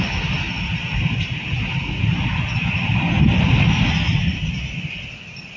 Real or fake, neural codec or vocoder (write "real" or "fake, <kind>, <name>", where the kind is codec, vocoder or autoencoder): real